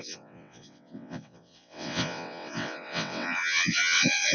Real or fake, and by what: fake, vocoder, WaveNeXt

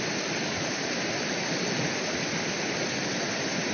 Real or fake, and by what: real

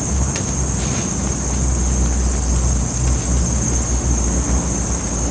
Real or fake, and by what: real